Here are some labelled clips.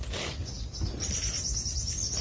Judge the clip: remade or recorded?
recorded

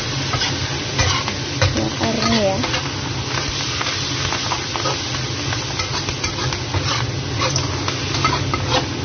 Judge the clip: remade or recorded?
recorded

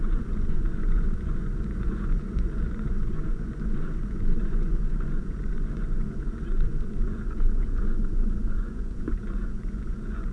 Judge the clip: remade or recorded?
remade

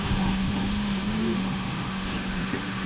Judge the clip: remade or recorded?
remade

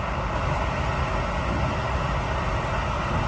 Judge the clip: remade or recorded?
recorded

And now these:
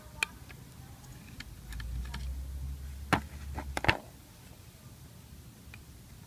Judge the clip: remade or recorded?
recorded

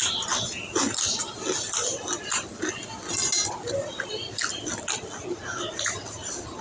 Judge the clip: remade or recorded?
recorded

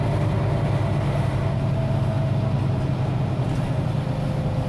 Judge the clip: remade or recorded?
recorded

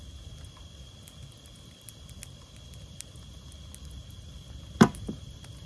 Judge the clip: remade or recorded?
recorded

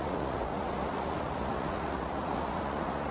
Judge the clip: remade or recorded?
remade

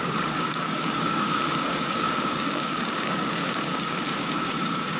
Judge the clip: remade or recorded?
remade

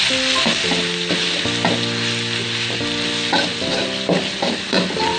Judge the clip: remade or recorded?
recorded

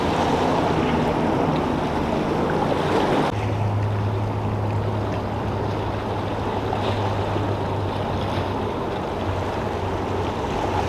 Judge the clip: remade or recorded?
recorded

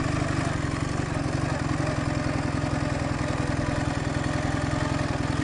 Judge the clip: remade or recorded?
recorded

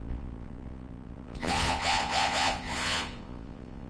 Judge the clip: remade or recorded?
remade